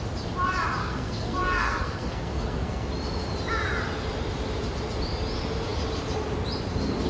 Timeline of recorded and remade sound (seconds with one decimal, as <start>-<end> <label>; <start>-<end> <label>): 0.0-0.8 recorded; 0.8-2.9 remade; 2.9-7.1 recorded